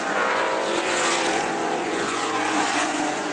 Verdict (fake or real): fake